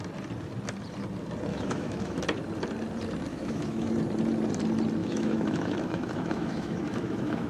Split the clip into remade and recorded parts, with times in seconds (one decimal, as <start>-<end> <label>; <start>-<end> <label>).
0.0-1.5 recorded; 1.5-2.2 remade; 2.2-3.3 recorded; 3.3-3.9 remade; 3.9-5.0 recorded; 5.0-7.5 remade